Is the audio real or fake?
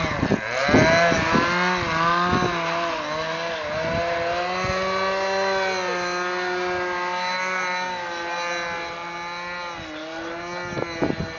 real